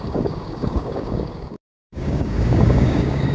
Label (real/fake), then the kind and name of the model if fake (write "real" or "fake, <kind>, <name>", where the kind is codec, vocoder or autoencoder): fake, codec, DAC